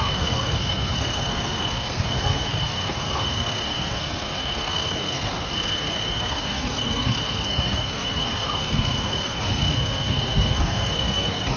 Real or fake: fake